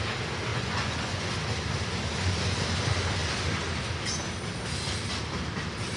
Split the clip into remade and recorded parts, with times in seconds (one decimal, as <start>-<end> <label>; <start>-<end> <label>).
0.0-0.5 recorded; 0.5-1.3 remade; 1.3-6.0 recorded